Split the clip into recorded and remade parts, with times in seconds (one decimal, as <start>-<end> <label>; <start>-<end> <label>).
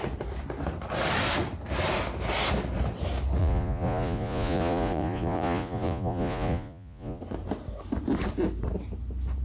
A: 0.0-3.4 recorded; 3.4-7.2 remade; 7.2-9.4 recorded